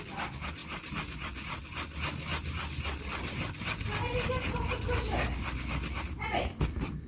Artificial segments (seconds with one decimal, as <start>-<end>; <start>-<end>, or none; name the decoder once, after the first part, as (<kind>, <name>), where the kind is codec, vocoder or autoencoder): none

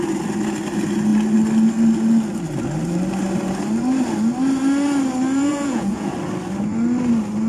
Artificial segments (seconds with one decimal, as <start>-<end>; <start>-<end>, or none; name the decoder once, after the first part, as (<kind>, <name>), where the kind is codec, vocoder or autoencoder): 5.5-6.1 (vocoder, Vocos)

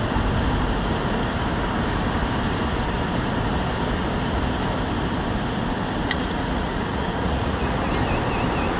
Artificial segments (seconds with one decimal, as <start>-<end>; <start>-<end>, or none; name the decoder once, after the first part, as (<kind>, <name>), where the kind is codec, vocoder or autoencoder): 6.0-7.9 (vocoder, Vocos)

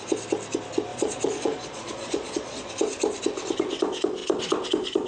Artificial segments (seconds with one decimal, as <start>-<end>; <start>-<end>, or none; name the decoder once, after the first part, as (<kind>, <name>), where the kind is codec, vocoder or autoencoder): 0.9-2.7 (vocoder, Vocos)

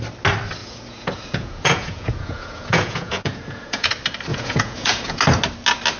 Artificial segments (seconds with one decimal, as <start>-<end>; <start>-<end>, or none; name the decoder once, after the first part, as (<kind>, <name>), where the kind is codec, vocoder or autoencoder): 0.6-3.9 (vocoder, Vocos); 4.3-5.2

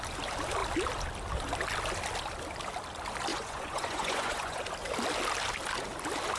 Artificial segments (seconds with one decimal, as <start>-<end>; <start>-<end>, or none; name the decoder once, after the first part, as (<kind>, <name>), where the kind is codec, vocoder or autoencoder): 3.3-4.6 (vocoder, Vocos)